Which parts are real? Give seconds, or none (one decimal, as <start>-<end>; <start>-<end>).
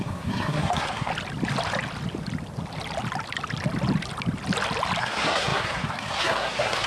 1.1-5.0